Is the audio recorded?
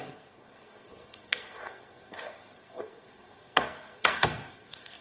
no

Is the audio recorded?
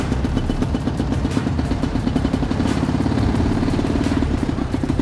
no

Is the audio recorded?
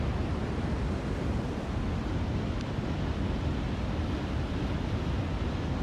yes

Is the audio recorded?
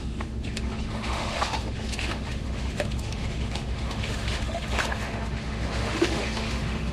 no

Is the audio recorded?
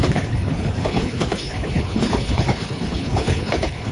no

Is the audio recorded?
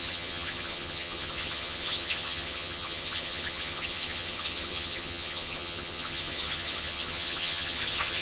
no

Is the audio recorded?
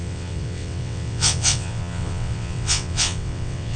no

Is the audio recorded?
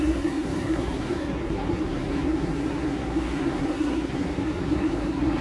no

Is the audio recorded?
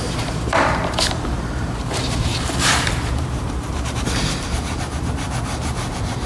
no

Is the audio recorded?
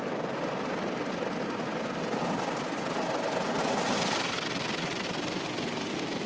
yes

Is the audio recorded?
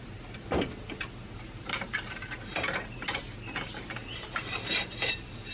no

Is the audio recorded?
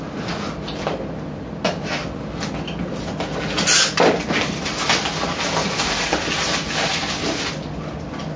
yes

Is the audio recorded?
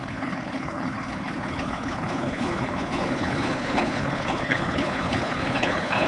no